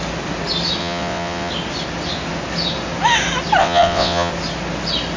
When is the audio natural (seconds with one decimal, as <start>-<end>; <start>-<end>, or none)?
0.0-0.8; 1.5-3.6; 4.3-5.2